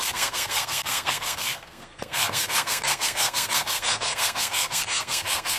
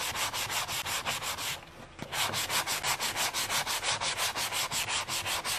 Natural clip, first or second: second